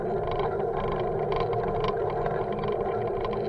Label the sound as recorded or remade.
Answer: recorded